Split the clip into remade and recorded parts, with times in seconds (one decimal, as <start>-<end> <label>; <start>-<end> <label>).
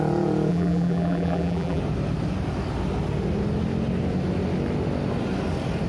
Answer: 0.0-0.5 recorded; 0.5-1.8 remade; 1.8-5.9 recorded